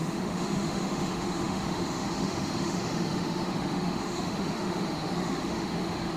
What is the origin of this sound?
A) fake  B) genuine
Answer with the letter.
A